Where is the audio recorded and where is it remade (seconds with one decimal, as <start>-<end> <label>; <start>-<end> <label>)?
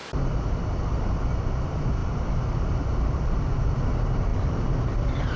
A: 0.0-0.5 remade; 0.5-2.0 recorded; 2.0-3.6 remade; 3.6-4.3 recorded; 4.3-5.4 remade